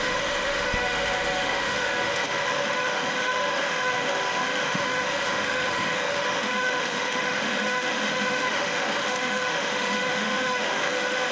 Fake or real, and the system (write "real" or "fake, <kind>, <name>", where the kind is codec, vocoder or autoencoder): fake, autoencoder, DAC-VAE